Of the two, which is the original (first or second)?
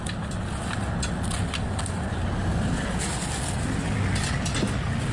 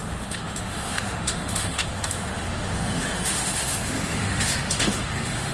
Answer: first